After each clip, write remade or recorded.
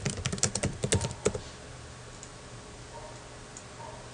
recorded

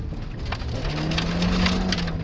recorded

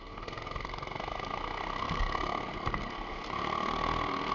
remade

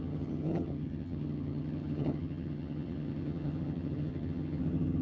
remade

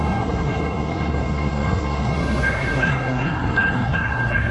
remade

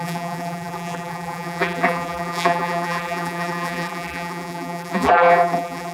remade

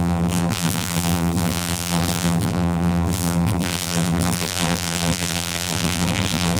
remade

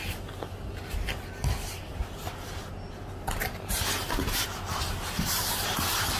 recorded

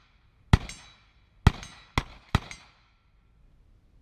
recorded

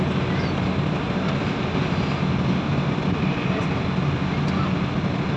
recorded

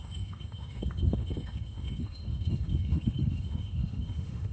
remade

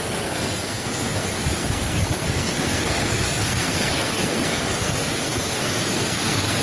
remade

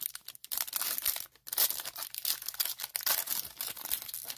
recorded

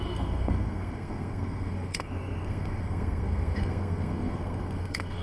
remade